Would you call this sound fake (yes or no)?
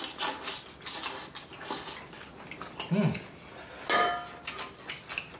no